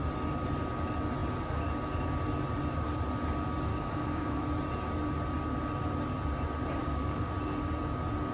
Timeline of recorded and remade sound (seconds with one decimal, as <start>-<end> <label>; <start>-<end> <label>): 0.0-3.7 recorded; 3.7-4.4 remade; 4.4-6.8 recorded; 6.8-7.3 remade; 7.3-8.3 recorded